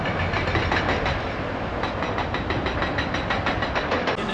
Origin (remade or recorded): recorded